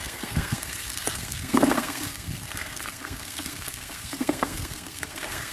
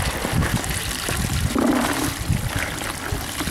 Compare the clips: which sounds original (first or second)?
second